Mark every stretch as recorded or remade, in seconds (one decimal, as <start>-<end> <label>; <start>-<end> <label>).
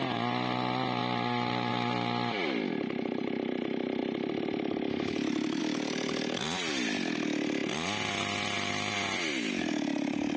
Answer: 0.0-10.4 recorded